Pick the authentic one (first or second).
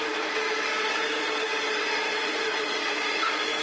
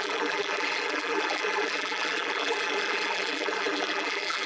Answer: first